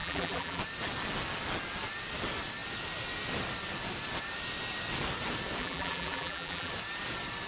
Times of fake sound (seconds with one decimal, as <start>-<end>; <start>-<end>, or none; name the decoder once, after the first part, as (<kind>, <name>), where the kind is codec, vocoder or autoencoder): 0.0-0.6 (vocoder, BigVGAN v2); 5.6-6.7